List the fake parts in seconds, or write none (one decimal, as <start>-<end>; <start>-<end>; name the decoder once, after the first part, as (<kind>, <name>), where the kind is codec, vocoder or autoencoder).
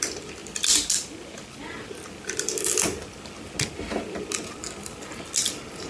none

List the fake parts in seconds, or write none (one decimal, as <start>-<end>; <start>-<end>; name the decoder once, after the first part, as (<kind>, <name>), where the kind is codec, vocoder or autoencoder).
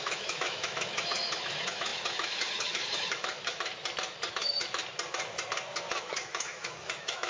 0.0-3.7 (autoencoder, DAC-VAE); 4.3-4.8; 6.0-7.3